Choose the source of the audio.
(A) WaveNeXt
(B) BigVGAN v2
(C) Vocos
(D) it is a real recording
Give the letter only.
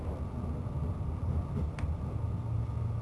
D